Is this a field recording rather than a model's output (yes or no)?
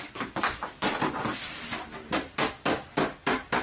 yes